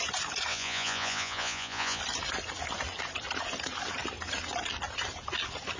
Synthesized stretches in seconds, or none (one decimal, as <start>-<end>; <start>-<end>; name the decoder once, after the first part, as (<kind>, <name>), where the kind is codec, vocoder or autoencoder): 0.5-2.0 (vocoder, Vocos)